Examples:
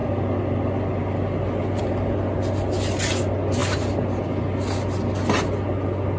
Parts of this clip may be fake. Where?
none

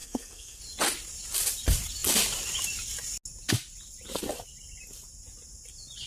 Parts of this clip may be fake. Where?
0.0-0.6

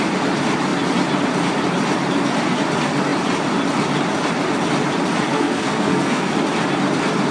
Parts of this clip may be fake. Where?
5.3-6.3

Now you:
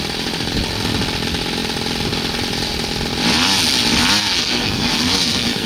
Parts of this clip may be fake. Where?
4.2-5.7

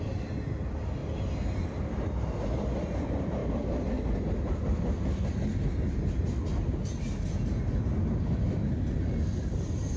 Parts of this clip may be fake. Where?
none

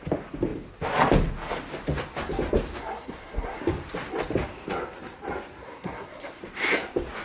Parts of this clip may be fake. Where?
2.8-3.6; 5.6-6.4

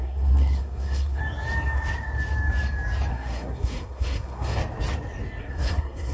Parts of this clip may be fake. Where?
0.0-1.2; 3.1-4.6; 5.4-6.1

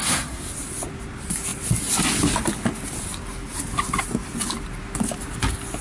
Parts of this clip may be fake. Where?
0.0-0.5